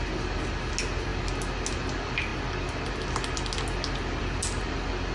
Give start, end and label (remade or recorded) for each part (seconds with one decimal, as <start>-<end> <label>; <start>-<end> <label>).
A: 0.0-5.1 recorded